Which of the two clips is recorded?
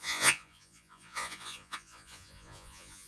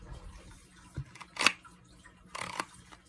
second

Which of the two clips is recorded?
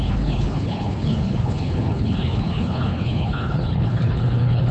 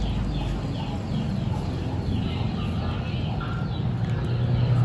second